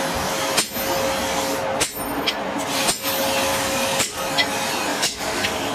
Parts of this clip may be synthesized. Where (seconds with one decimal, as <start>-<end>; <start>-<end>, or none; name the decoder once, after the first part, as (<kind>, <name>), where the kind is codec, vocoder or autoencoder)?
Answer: 3.5-4.2 (codec, DAC); 4.9-5.7

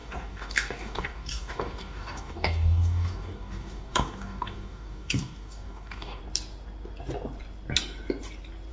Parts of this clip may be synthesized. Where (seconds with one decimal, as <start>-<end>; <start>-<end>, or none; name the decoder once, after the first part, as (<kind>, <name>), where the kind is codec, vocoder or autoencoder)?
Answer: 0.0-6.2 (codec, DAC)

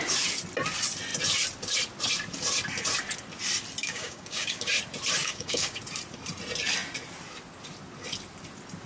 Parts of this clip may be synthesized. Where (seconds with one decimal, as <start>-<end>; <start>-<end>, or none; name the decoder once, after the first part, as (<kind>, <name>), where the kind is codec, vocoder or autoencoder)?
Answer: 3.8-4.7 (codec, DAC); 5.2-5.8

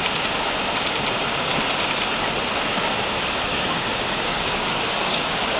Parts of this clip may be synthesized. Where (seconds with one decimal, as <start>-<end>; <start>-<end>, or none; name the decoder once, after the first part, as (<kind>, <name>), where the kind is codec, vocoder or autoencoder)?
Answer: 3.5-5.6 (codec, DAC)

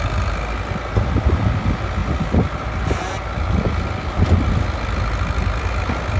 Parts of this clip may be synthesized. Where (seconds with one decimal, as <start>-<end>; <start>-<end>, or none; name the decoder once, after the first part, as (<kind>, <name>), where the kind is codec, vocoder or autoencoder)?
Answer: none

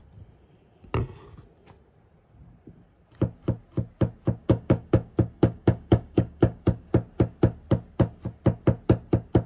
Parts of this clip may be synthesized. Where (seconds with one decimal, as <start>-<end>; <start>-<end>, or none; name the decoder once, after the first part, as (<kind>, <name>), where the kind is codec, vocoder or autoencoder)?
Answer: 4.4-6.9 (codec, DAC)

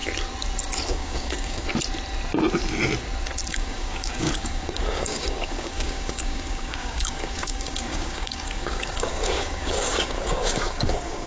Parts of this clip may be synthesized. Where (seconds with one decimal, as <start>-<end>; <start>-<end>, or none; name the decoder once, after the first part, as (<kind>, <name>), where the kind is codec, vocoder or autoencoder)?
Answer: 0.9-1.7 (codec, DAC); 3.5-11.3

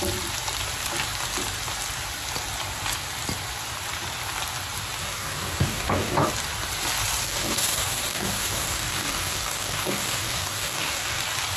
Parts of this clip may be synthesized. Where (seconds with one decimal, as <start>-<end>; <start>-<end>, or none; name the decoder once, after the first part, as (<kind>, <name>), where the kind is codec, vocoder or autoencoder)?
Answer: 5.0-6.3 (codec, DAC); 7.2-11.2